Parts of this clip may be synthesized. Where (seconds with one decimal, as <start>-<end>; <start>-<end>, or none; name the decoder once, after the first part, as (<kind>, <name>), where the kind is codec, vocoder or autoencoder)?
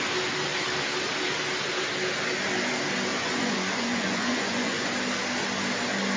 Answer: 3.1-4.9 (vocoder, Vocos)